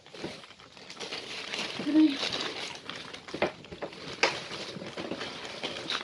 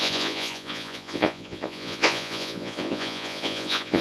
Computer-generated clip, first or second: second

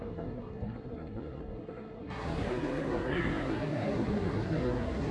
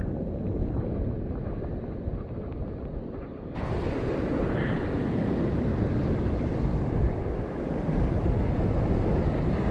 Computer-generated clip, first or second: first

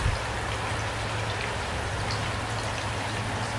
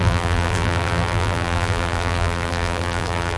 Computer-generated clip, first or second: second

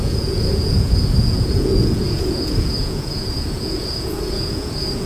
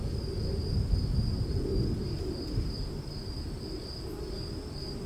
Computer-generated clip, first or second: first